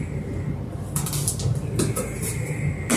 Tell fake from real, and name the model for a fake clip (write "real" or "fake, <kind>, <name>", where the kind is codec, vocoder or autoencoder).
real